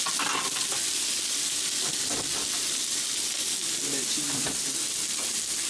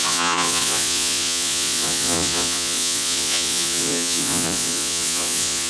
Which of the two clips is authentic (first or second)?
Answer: first